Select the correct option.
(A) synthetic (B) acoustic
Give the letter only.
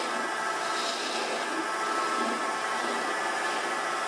B